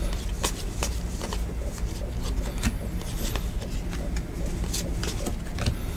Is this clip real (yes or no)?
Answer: yes